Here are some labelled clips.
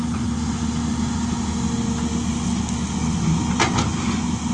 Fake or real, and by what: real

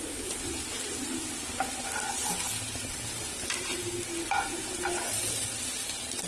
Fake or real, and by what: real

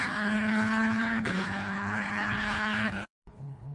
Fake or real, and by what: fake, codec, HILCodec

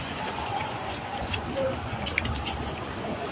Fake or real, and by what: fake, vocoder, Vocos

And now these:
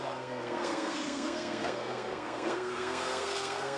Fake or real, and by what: fake, codec, SNAC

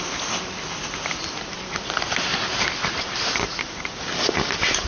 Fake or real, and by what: real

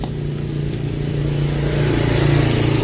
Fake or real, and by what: real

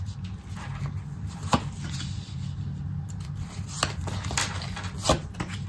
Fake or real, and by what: real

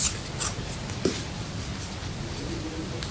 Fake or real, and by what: real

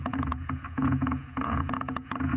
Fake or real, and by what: fake, vocoder, Vocos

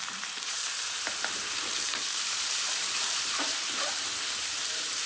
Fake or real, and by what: fake, vocoder, BigVGAN v2